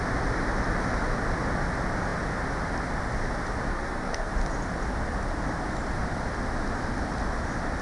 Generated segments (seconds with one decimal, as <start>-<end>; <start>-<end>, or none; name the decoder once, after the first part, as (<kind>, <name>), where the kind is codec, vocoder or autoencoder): 3.7-4.3 (codec, SNAC)